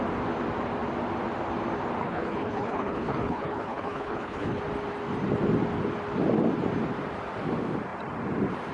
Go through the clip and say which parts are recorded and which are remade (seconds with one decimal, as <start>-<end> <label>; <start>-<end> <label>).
0.0-2.0 recorded; 2.0-4.6 remade; 4.6-8.7 recorded